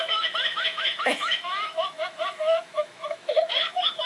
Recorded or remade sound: remade